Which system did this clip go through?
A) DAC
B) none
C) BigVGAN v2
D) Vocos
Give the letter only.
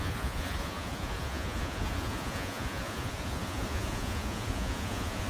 D